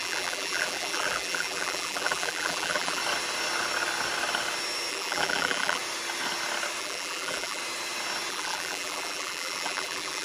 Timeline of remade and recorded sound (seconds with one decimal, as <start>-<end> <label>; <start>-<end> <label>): 0.0-3.0 remade; 3.0-4.9 recorded; 4.9-5.8 remade; 5.8-6.8 recorded; 6.8-7.6 remade; 7.6-8.3 recorded; 8.3-10.2 remade